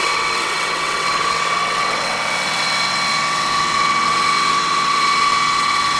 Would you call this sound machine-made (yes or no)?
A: yes